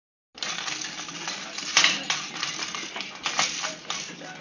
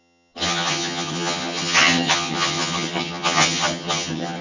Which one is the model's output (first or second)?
second